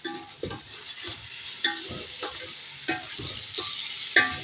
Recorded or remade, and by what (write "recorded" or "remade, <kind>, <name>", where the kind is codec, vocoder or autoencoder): recorded